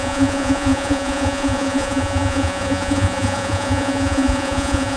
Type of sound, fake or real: fake